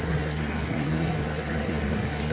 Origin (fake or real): fake